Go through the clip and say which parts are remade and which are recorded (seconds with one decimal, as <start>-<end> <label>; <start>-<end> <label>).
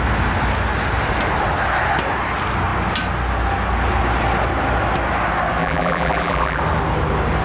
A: 0.0-5.6 recorded; 5.6-6.6 remade; 6.6-7.4 recorded